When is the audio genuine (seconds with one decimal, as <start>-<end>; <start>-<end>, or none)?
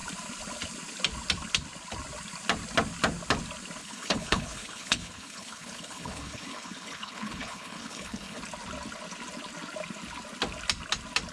0.0-3.8; 8.4-11.3